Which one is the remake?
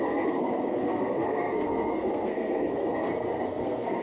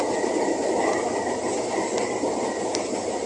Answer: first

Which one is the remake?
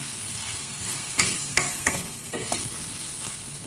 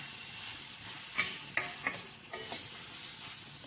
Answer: first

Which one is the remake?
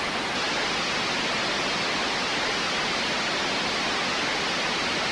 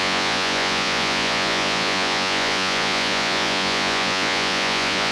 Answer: second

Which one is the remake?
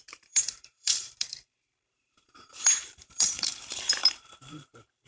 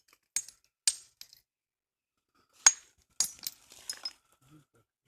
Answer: first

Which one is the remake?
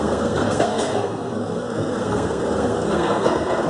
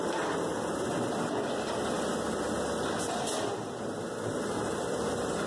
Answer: first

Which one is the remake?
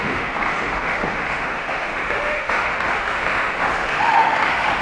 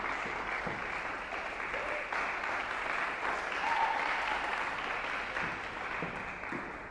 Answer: first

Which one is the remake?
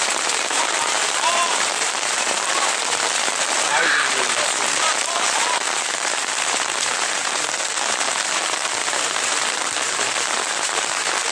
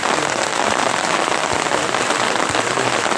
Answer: first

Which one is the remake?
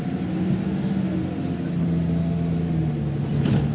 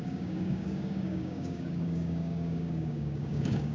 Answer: second